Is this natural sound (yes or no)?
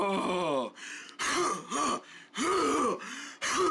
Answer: yes